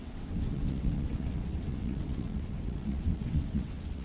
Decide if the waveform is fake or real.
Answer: fake